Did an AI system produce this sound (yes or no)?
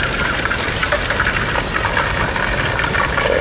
no